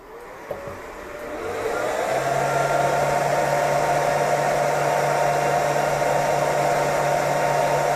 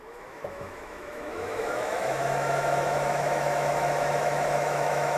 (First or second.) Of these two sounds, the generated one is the second